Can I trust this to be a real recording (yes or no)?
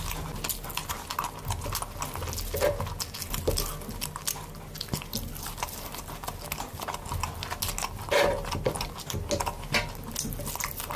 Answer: yes